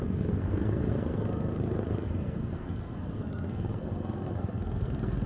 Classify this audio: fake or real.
fake